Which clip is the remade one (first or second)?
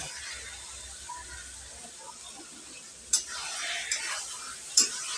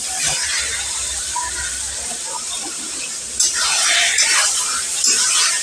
second